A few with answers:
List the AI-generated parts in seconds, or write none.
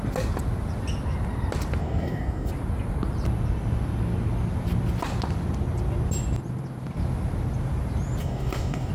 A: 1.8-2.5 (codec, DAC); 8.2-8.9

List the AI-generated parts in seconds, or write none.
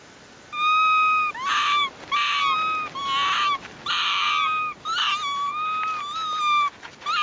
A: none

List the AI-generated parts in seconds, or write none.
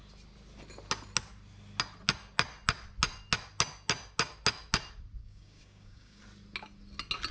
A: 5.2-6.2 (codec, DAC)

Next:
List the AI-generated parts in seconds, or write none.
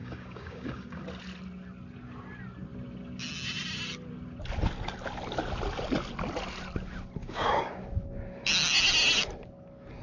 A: 0.0-1.0 (codec, DAC); 7.2-7.8